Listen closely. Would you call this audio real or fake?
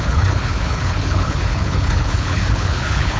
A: fake